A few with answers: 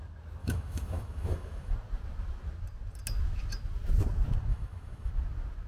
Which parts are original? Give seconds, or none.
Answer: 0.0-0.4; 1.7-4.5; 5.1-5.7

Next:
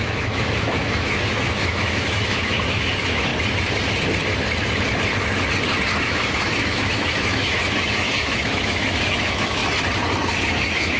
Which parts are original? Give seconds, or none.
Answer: 3.3-6.0; 9.6-10.4

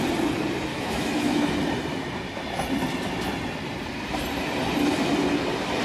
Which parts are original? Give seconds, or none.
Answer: 0.0-0.7; 1.5-5.8